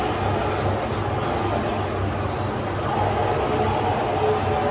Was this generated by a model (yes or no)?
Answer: no